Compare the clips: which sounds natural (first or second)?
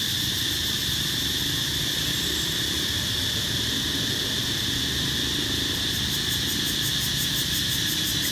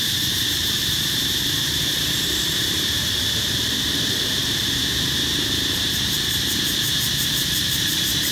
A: first